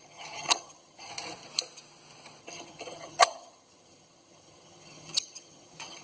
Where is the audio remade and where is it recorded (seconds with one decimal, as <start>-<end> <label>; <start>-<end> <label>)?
0.0-1.1 remade; 1.1-2.4 recorded; 2.4-6.0 remade